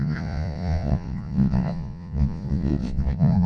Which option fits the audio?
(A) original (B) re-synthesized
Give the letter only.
B